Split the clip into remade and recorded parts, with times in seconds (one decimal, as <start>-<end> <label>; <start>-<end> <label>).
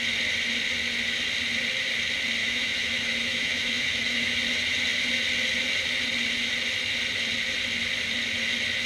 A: 0.0-2.4 recorded; 2.4-4.4 remade; 4.4-8.9 recorded